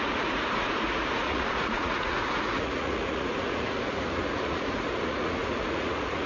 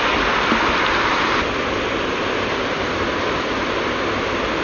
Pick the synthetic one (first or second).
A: first